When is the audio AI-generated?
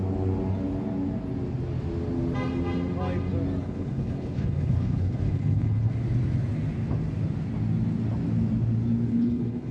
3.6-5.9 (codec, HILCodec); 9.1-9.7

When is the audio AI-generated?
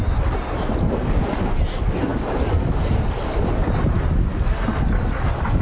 none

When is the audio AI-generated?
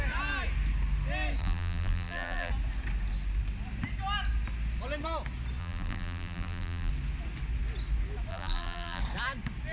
1.4-2.5 (vocoder, BigVGAN v2); 5.6-6.9; 8.3-9.0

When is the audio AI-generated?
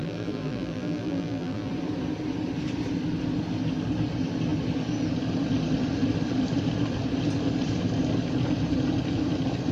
0.0-1.7 (vocoder, BigVGAN v2)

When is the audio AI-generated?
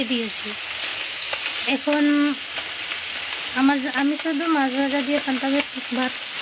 0.9-1.4 (autoencoder, DAC-VAE)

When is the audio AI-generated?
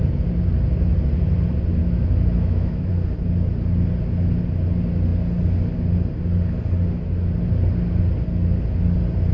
1.8-2.9 (autoencoder, DAC-VAE)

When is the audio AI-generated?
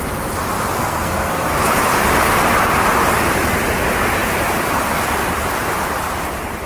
0.8-1.5 (codec, SNAC)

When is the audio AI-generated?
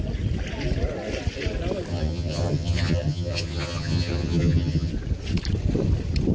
1.9-4.9 (vocoder, HiFi-GAN)